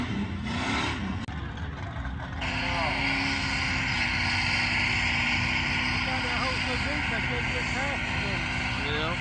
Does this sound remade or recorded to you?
recorded